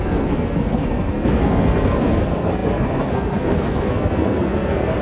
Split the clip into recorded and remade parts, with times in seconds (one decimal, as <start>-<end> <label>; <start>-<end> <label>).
0.0-5.0 remade